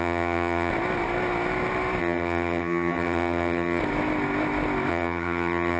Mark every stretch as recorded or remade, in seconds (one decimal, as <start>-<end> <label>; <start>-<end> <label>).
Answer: 0.0-0.7 remade; 0.7-2.0 recorded; 2.0-3.8 remade; 3.8-4.9 recorded; 4.9-5.8 remade